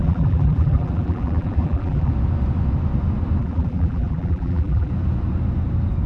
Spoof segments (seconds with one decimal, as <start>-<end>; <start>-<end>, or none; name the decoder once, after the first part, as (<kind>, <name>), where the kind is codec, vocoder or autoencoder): 0.0-2.1 (vocoder, BigVGAN v2); 3.4-4.9